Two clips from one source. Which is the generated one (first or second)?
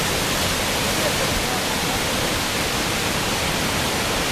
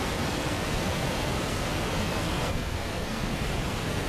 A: second